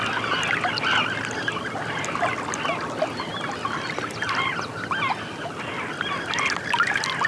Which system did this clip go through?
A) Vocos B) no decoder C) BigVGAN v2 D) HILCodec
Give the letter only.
B